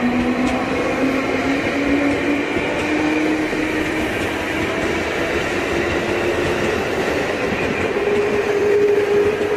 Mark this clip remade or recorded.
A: recorded